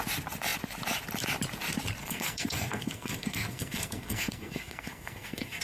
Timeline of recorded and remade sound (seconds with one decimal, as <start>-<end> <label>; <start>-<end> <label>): 0.0-2.0 recorded; 2.0-5.6 remade